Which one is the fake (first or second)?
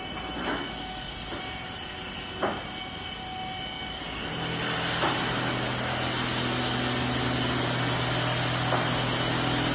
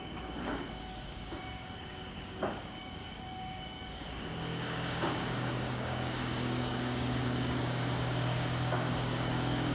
second